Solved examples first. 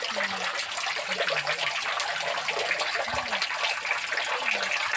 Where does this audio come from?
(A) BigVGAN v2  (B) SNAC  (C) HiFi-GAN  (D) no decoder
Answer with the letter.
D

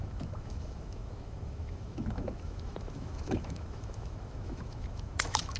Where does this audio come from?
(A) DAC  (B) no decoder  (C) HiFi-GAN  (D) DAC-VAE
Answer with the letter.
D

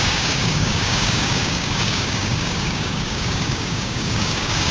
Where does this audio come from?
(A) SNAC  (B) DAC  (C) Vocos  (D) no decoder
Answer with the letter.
B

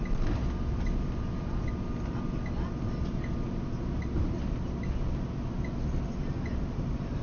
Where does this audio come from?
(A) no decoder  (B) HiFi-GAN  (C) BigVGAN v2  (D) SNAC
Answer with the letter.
A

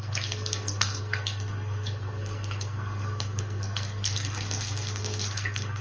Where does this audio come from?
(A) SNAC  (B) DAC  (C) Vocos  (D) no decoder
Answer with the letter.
A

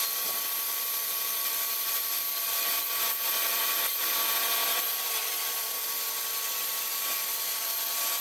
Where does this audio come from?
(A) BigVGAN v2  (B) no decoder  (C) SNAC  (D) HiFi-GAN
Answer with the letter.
B